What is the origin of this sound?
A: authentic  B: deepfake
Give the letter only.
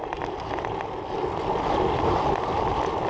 A